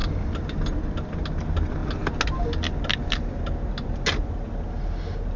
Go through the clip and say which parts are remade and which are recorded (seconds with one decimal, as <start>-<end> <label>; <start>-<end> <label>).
0.0-5.4 recorded